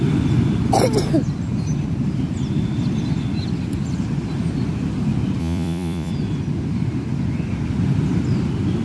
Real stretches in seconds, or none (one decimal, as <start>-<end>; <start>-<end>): 0.0-5.4; 6.1-8.8